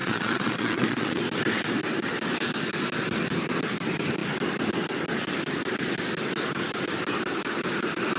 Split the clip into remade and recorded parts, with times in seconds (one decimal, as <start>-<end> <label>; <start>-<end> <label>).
0.0-1.2 remade; 1.2-8.2 recorded